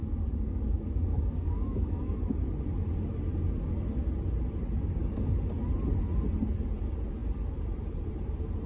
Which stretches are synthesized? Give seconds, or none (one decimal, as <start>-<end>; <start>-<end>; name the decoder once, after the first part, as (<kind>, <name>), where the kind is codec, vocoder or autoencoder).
0.0-2.0 (codec, DAC)